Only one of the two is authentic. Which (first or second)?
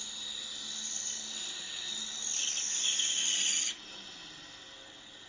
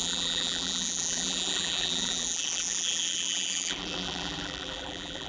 first